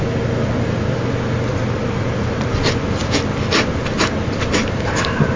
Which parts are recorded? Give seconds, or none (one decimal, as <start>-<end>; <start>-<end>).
0.0-5.4